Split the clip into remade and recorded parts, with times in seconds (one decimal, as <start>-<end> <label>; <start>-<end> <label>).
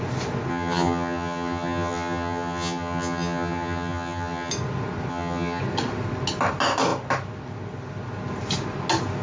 0.0-0.5 recorded; 0.5-4.5 remade; 4.5-5.1 recorded; 5.1-5.6 remade; 5.6-9.2 recorded